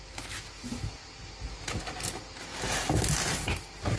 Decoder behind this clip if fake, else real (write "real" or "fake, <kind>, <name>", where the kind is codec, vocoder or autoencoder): real